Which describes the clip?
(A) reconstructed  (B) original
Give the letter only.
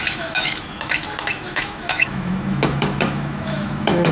A